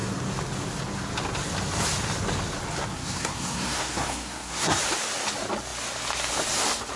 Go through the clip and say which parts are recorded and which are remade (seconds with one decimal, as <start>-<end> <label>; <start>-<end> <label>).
0.0-2.9 recorded; 2.9-4.8 remade; 4.8-7.0 recorded